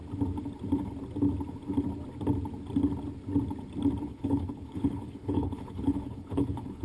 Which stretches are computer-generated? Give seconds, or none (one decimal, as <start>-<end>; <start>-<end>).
4.1-6.8